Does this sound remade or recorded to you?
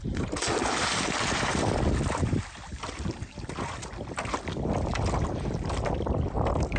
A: recorded